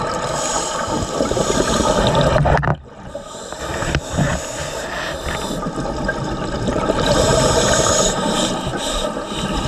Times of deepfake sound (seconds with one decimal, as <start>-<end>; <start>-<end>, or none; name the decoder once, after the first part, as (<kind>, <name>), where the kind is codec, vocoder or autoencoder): 2.7-3.6 (vocoder, BigVGAN v2); 6.7-8.5